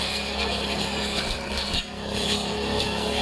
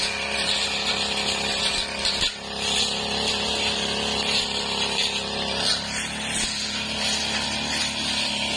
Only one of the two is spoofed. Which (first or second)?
first